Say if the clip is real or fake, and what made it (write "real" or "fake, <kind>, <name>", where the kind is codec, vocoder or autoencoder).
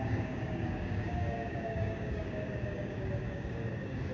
fake, codec, DAC